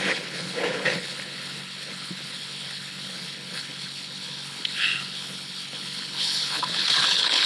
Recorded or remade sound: remade